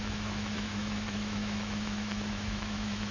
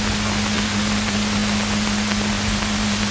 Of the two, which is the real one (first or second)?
second